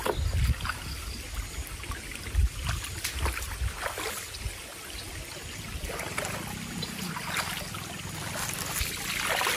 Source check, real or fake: real